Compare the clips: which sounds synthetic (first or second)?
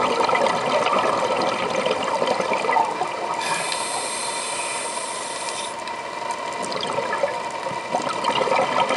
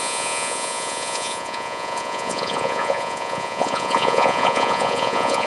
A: second